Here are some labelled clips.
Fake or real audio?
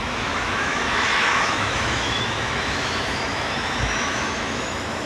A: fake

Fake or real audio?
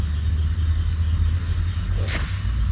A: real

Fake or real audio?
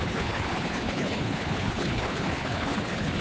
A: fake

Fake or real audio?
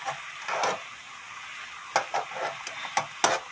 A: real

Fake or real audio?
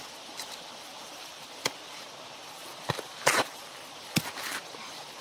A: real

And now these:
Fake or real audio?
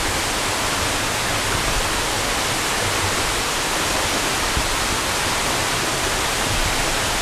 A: real